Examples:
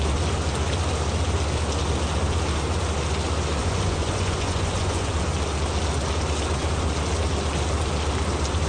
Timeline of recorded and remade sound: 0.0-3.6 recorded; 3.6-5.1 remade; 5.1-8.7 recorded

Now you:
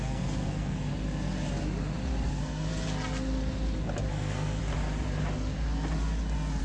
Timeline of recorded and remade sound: 0.0-0.9 remade; 0.9-2.3 recorded; 2.3-2.7 remade; 2.7-4.1 recorded; 4.1-4.6 remade; 4.6-6.6 recorded

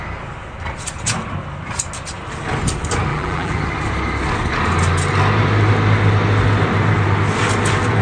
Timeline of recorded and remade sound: 0.0-3.1 recorded; 3.1-3.6 remade; 3.6-8.0 recorded

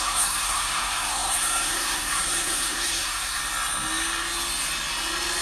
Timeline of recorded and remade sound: 0.0-3.4 remade; 3.4-5.4 recorded

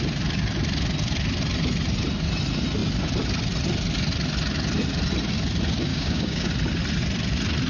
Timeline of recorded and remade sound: 0.0-5.9 recorded; 5.9-6.5 remade; 6.5-7.7 recorded

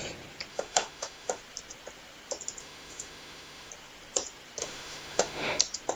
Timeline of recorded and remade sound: 0.0-0.5 recorded; 0.5-1.4 remade; 1.4-2.6 recorded; 2.6-3.7 remade; 3.7-4.6 recorded; 4.6-5.6 remade; 5.6-6.0 recorded

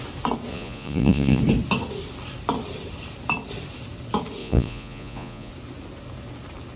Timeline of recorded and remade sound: 0.0-0.5 recorded; 0.5-1.4 remade; 1.4-4.4 recorded; 4.4-5.5 remade; 5.5-6.8 recorded

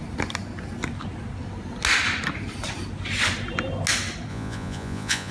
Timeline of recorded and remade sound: 0.0-4.3 recorded; 4.3-5.3 remade